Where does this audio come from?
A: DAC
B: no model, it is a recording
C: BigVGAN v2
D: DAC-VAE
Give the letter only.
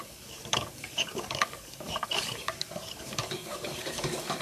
A